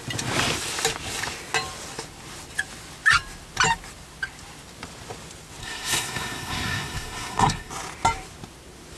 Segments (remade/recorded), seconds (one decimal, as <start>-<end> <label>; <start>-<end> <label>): 0.0-5.6 recorded; 5.6-7.7 remade; 7.7-9.0 recorded